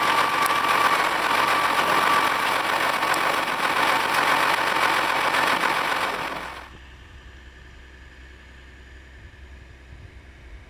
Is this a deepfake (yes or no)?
no